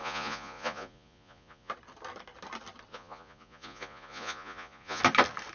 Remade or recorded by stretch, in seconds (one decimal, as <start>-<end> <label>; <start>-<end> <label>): 0.0-1.7 remade; 1.7-2.9 recorded; 2.9-5.0 remade; 5.0-5.5 recorded